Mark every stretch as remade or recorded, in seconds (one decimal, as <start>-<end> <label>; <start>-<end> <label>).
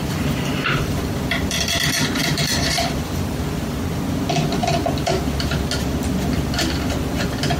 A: 0.0-1.8 remade; 1.8-2.2 recorded; 2.2-3.8 remade; 3.8-4.6 recorded; 4.6-5.6 remade; 5.6-7.6 recorded